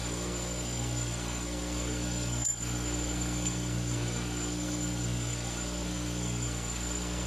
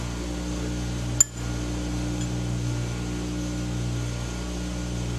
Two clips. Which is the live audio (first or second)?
second